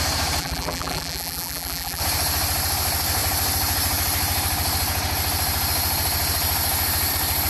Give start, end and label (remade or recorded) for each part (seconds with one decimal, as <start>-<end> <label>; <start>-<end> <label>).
0.0-0.4 recorded; 0.4-2.0 remade; 2.0-7.5 recorded